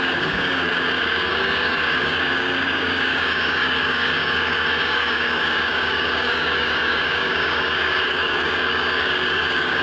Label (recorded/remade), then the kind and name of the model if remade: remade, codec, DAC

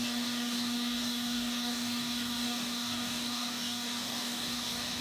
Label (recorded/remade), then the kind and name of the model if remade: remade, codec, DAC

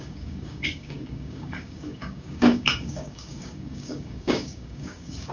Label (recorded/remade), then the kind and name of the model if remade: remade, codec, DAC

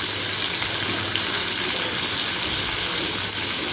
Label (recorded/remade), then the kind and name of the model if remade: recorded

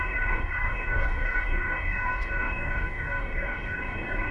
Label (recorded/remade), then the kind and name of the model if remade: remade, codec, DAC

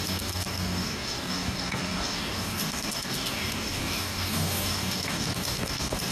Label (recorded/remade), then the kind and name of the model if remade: remade, codec, DAC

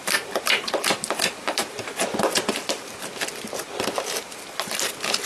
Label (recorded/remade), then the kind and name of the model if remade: recorded